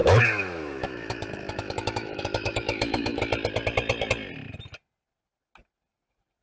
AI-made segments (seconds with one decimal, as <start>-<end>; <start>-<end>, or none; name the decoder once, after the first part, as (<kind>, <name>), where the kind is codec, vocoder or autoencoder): 0.0-3.2 (autoencoder, DAC-VAE)